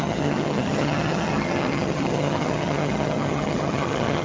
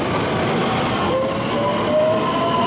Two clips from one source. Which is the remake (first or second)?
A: first